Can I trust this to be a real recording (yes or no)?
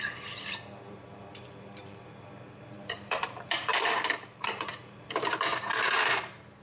no